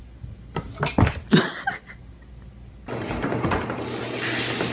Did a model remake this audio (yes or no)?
no